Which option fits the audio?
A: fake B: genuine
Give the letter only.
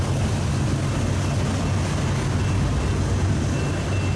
B